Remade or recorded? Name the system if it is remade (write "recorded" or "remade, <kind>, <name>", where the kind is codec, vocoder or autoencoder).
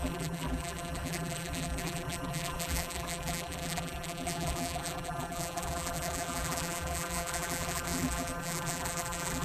remade, vocoder, BigVGAN v2